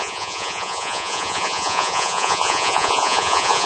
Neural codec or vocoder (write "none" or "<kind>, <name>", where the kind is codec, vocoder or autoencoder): vocoder, Vocos